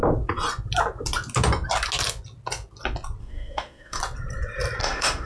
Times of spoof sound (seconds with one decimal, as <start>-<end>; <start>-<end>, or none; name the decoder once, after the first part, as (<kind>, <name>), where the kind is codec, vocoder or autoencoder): 3.2-4.0 (autoencoder, DAC-VAE); 4.8-5.3